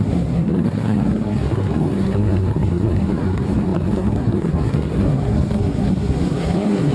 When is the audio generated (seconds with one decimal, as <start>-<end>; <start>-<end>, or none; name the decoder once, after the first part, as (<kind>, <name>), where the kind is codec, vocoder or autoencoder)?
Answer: 0.0-6.9 (codec, SNAC)